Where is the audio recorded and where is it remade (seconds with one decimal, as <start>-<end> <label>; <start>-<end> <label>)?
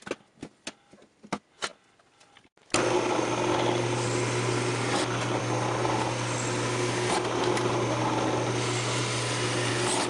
0.0-10.1 recorded